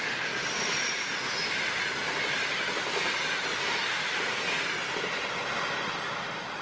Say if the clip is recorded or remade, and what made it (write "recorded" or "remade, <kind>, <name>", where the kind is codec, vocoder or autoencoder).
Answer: recorded